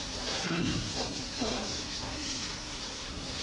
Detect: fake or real fake